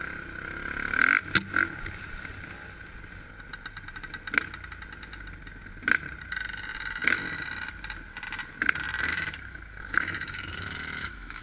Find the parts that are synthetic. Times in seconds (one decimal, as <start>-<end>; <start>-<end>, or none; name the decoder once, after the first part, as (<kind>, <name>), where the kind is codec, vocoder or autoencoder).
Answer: 9.1-11.4 (autoencoder, DAC-VAE)